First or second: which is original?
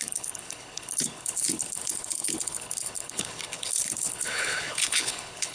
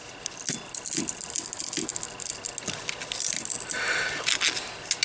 second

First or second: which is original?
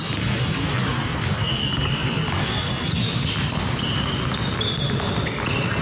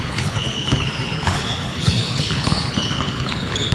first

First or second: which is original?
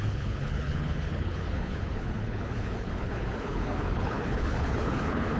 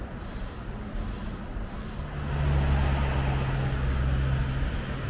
second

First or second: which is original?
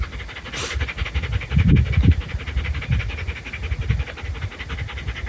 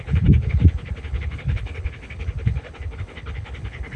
first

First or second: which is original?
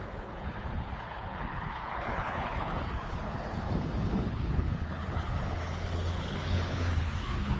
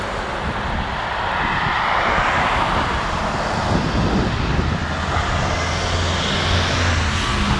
second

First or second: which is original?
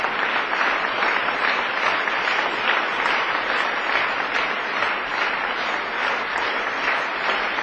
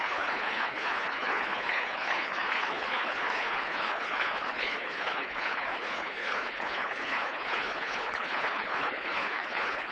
first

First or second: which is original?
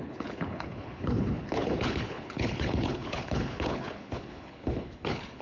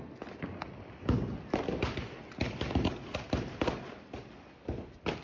second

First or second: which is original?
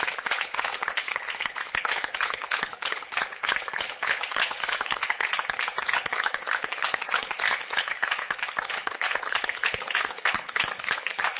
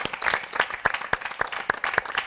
second